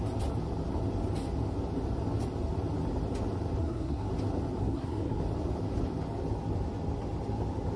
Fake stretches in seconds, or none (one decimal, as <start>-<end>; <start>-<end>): 3.6-4.1; 4.6-5.2